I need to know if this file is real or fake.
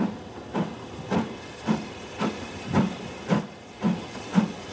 real